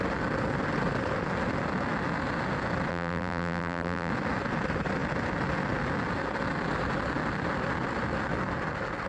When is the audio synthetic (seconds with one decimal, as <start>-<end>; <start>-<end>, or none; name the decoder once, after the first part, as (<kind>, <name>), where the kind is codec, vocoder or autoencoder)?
2.9-4.1 (vocoder, BigVGAN v2)